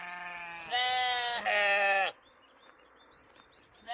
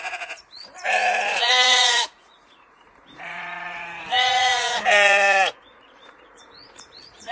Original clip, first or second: first